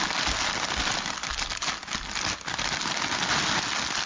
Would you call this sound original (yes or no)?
yes